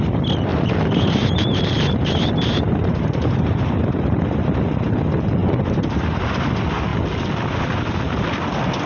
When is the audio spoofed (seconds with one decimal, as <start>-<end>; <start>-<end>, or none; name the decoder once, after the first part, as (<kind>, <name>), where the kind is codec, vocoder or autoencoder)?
0.5-4.2 (vocoder, BigVGAN v2); 5.4-6.0